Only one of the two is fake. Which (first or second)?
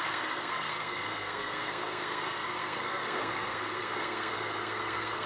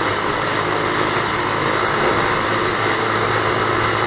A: first